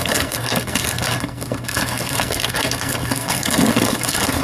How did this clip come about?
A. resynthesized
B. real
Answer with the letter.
A